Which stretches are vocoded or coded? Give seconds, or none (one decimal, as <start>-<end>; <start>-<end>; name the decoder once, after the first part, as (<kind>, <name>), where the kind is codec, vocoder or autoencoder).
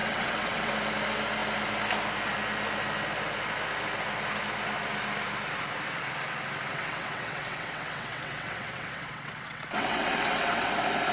0.0-0.7 (vocoder, WaveNeXt); 6.7-10.7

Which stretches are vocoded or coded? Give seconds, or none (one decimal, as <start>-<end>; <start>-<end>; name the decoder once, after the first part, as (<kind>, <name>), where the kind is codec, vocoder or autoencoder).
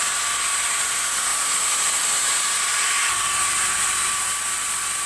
none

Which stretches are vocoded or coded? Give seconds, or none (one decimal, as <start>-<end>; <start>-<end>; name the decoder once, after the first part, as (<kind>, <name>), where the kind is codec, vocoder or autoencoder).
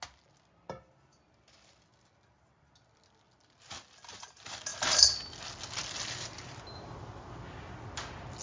none